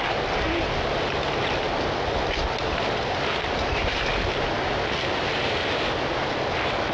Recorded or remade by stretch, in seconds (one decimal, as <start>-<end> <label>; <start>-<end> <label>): 0.0-6.9 recorded